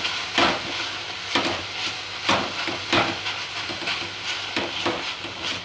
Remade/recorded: recorded